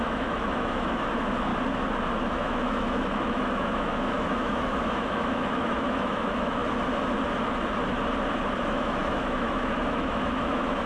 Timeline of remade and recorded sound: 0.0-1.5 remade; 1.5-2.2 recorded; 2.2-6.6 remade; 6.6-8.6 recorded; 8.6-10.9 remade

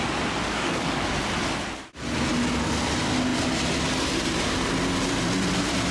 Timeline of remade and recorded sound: 0.0-0.4 recorded; 0.4-1.2 remade; 1.2-5.9 recorded

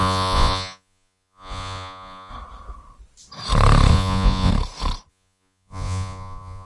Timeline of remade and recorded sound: 0.0-2.3 remade; 2.3-3.9 recorded; 3.9-4.5 remade; 4.5-5.1 recorded; 5.1-6.7 remade

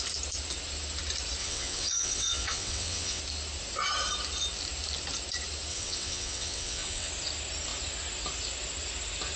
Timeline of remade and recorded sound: 0.0-1.4 recorded; 1.4-3.2 remade; 3.2-5.7 recorded; 5.7-7.1 remade; 7.1-9.4 recorded